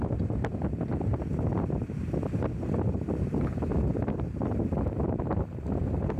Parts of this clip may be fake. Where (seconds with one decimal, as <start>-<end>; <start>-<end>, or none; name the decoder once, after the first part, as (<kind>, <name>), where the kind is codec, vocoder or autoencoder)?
none